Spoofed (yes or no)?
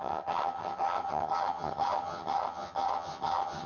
yes